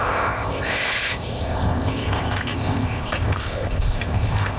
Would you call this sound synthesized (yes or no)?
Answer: yes